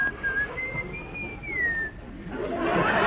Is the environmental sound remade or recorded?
recorded